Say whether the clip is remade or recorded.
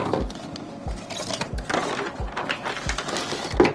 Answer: recorded